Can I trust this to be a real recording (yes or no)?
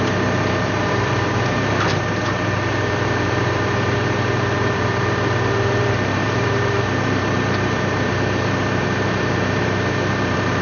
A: no